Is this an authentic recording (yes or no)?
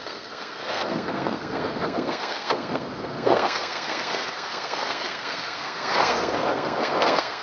no